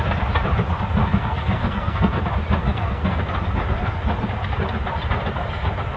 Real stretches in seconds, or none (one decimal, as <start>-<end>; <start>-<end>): 0.0-1.0; 2.2-2.6; 3.2-6.0